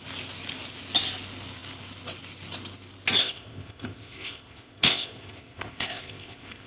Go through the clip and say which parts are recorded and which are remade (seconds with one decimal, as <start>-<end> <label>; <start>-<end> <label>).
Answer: 0.0-3.2 recorded; 3.2-6.7 remade